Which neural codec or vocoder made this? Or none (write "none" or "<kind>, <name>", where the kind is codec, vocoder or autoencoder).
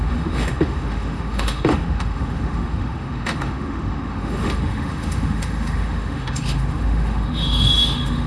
autoencoder, DAC-VAE